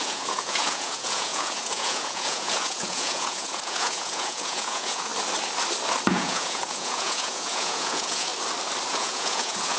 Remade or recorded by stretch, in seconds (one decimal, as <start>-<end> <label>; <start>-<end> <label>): 0.0-5.1 remade; 5.1-6.1 recorded; 6.1-8.3 remade; 8.3-8.9 recorded; 8.9-9.8 remade